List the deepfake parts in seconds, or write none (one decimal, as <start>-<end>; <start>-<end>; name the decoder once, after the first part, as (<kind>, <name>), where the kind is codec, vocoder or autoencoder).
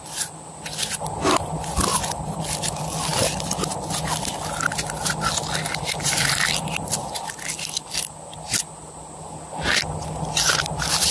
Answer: none